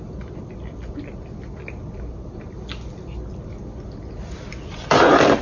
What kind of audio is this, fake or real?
real